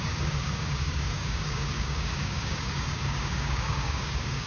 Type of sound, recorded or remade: remade